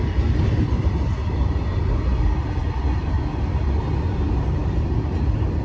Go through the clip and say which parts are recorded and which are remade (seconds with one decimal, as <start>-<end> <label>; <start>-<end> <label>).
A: 0.0-5.6 recorded